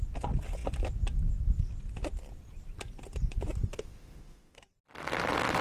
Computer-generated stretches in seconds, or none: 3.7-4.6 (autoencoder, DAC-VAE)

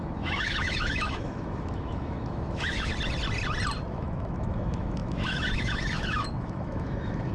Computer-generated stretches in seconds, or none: 0.0-2.9 (autoencoder, DAC-VAE); 3.9-7.3

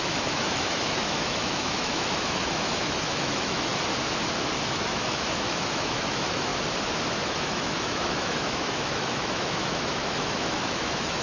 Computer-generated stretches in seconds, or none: 0.0-3.7 (autoencoder, DAC-VAE); 4.7-6.5; 7.1-11.2

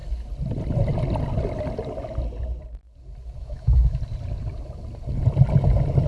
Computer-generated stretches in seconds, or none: 3.4-4.0 (autoencoder, DAC-VAE)

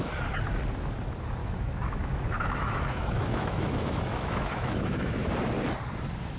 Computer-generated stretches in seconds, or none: 1.4-5.2 (autoencoder, DAC-VAE)

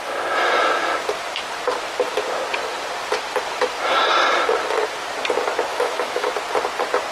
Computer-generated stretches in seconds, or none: 5.7-6.3 (autoencoder, DAC-VAE)